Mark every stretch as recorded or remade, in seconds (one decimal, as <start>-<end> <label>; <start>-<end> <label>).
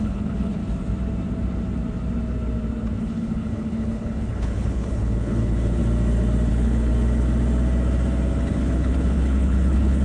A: 0.0-0.6 remade; 0.6-3.0 recorded; 3.0-5.8 remade; 5.8-6.5 recorded; 6.5-6.9 remade; 6.9-8.5 recorded; 8.5-10.0 remade